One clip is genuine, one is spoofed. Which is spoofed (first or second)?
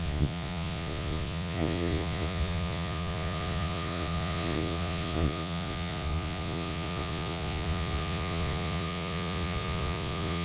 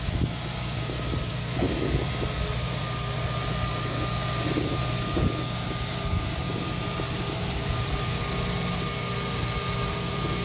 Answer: first